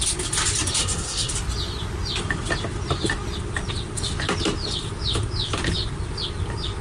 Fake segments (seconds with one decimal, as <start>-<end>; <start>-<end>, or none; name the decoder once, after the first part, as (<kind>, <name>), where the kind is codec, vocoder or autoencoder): 0.8-1.3 (codec, SNAC)